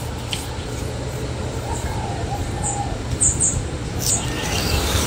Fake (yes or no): yes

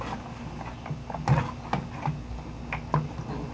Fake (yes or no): no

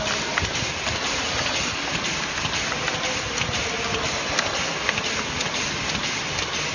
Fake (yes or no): no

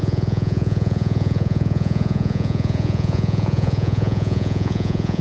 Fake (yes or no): yes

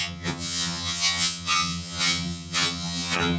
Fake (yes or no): yes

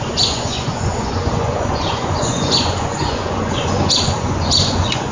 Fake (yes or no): yes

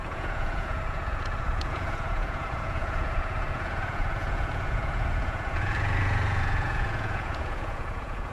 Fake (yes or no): yes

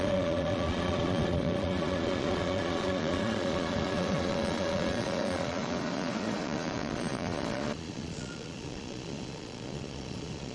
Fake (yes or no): yes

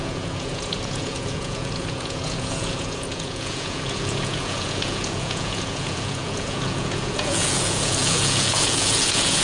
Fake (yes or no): yes